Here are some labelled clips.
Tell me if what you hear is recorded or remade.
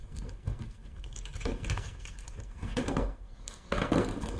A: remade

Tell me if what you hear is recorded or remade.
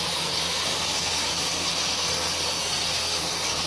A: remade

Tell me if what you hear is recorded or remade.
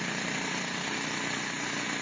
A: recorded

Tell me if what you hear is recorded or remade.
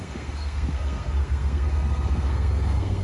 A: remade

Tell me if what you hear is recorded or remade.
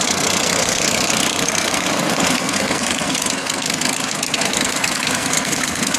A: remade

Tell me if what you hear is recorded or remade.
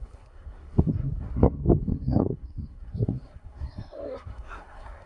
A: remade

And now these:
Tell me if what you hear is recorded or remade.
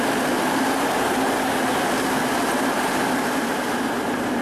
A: recorded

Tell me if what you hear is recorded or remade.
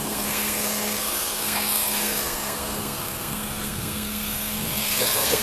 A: remade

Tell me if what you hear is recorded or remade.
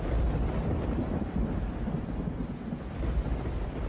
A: recorded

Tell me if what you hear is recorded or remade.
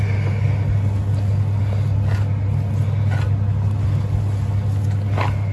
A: recorded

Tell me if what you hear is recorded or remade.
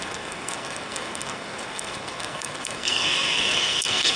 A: remade